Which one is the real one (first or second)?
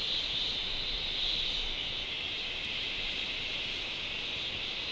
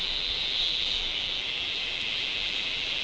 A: first